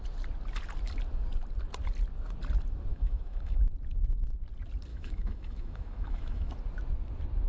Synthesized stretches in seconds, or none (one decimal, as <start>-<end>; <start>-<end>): 2.9-3.6; 4.9-6.5